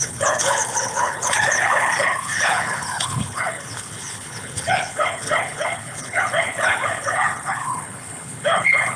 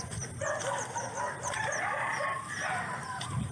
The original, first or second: second